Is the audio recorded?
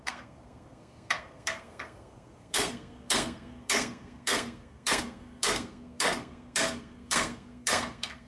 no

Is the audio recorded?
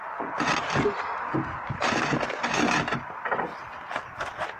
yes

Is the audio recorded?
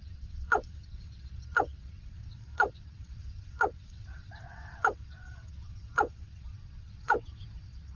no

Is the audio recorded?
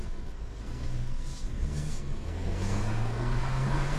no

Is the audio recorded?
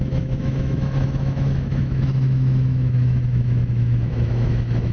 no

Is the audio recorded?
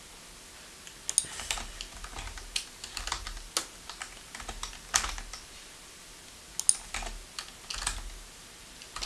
yes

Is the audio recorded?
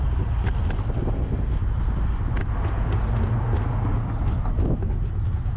yes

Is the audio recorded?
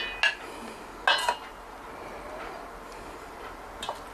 yes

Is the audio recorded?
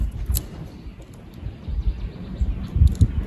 yes